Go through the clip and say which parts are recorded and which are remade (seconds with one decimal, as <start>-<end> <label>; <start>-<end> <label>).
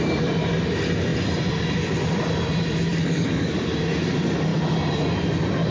0.0-2.9 recorded; 2.9-3.5 remade; 3.5-5.7 recorded